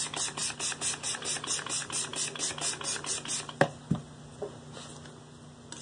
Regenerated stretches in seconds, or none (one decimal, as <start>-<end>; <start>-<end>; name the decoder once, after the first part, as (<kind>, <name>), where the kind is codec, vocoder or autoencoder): none